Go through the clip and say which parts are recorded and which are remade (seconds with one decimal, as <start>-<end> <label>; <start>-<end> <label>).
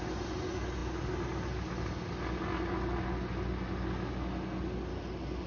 0.0-5.5 recorded